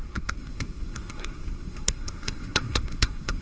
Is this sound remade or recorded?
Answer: remade